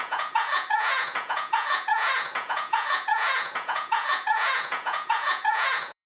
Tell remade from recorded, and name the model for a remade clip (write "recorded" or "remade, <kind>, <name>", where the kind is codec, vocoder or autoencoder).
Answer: remade, vocoder, Vocos